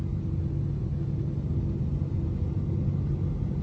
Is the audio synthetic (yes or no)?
no